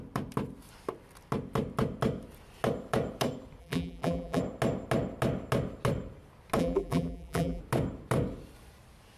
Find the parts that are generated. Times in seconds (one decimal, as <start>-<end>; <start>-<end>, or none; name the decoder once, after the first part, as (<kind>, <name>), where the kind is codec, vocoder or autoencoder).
3.6-4.4 (vocoder, BigVGAN v2); 6.6-7.6